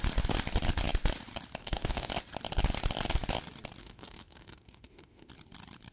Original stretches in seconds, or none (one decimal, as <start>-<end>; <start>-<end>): 0.0-1.6; 2.1-3.8; 5.3-5.9